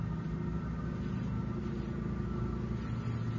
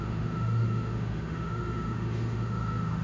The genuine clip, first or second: first